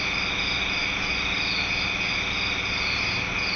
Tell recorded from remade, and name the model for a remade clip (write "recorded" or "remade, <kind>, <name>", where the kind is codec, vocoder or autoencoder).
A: recorded